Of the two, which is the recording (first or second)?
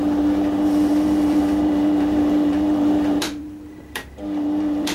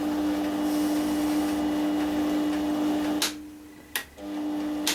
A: second